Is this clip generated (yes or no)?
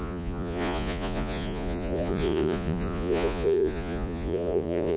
yes